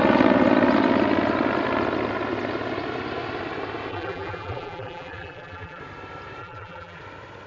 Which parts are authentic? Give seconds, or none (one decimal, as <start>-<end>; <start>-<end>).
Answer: 0.0-3.9; 5.8-6.4; 7.0-7.5